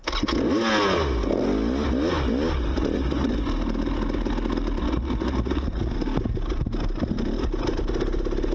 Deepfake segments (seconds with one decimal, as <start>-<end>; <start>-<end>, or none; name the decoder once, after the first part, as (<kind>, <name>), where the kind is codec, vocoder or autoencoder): 2.7-3.3 (vocoder, Vocos); 4.8-5.9